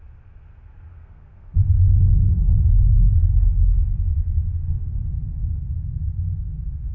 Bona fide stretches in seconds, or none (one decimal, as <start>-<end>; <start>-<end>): 0.0-0.9; 5.0-6.9